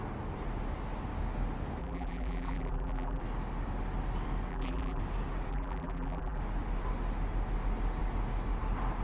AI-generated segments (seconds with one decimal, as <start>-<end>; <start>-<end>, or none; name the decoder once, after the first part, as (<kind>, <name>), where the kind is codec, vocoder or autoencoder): 1.8-3.2 (vocoder, BigVGAN v2); 4.5-5.0; 5.5-6.4